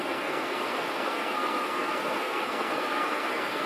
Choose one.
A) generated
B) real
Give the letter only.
A